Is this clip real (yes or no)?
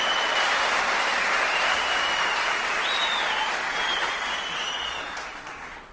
yes